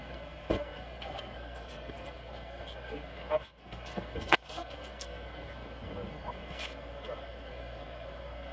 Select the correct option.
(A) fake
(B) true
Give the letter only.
A